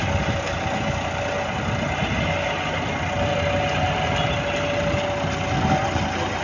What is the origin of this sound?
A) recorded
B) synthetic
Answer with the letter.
A